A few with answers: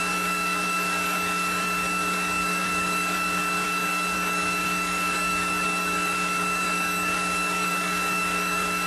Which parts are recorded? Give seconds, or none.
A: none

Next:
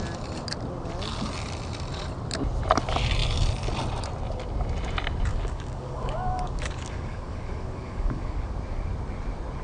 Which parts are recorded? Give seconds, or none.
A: 0.0-5.3; 8.5-9.6